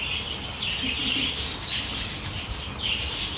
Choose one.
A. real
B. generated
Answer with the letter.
A